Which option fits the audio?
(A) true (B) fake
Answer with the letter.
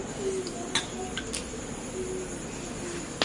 A